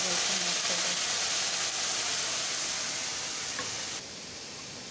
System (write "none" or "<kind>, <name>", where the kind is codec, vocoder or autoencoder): none